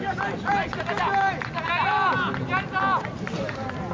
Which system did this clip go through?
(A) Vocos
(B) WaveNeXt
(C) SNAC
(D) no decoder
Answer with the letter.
D